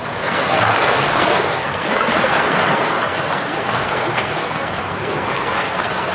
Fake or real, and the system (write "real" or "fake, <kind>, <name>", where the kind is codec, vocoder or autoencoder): fake, codec, SNAC